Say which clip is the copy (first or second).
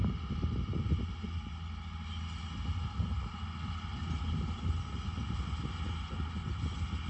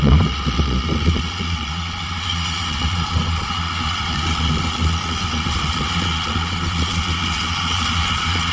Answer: second